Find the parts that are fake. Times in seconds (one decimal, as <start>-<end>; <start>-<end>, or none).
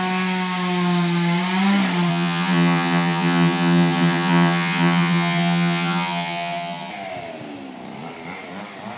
2.1-6.9